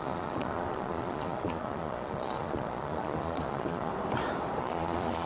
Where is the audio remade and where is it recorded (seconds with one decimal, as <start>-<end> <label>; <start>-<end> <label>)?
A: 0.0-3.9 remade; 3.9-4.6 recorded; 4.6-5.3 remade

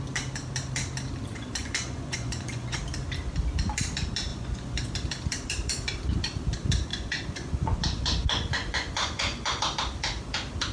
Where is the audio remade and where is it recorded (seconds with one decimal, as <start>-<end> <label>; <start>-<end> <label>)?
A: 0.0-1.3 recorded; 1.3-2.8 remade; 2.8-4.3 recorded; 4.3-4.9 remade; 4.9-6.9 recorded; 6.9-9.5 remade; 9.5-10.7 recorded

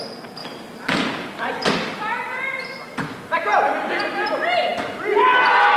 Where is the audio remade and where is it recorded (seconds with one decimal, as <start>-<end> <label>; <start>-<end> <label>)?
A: 0.0-5.8 recorded

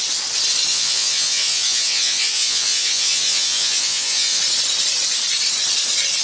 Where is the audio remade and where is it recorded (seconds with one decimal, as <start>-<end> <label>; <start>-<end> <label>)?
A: 0.0-0.7 recorded; 0.7-4.4 remade; 4.4-6.2 recorded

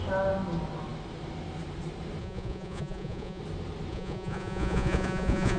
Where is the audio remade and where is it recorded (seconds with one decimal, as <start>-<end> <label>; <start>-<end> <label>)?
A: 0.0-2.2 recorded; 2.2-3.4 remade; 3.4-3.9 recorded; 3.9-5.6 remade

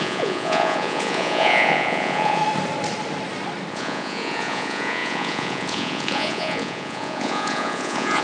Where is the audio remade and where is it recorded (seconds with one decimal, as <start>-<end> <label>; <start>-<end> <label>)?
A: 0.0-2.4 remade; 2.4-3.7 recorded; 3.7-8.2 remade